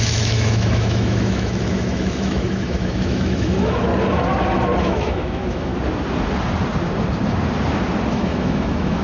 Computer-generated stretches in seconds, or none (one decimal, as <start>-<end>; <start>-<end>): 0.0-3.9; 4.8-5.7; 8.1-9.0